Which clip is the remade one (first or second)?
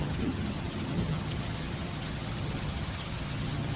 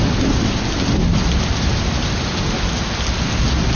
first